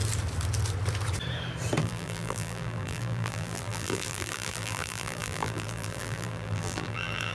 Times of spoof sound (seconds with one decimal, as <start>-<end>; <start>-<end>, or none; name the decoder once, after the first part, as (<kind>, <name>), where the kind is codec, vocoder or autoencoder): 1.8-7.3 (vocoder, BigVGAN v2)